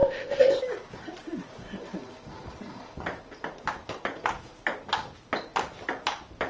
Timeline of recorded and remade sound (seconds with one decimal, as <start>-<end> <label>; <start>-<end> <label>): 0.0-0.6 remade; 0.6-6.5 recorded